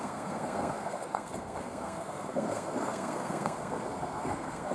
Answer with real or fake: fake